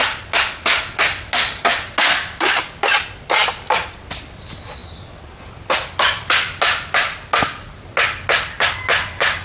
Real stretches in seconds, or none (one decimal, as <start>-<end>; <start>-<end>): 0.0-9.4